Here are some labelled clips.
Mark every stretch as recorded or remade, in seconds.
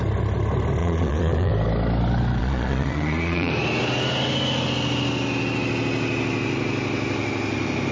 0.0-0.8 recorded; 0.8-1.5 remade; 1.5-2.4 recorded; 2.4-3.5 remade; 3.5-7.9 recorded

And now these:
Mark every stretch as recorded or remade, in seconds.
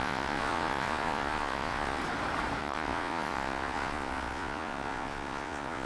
0.0-2.0 remade; 2.0-2.6 recorded; 2.6-5.9 remade